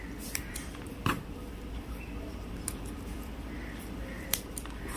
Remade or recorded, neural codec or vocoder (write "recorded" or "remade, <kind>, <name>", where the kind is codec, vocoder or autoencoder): remade, vocoder, BigVGAN v2